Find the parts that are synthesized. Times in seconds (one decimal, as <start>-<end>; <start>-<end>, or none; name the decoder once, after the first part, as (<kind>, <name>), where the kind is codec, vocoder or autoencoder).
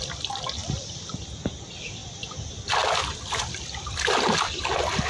2.0-4.6 (vocoder, BigVGAN v2)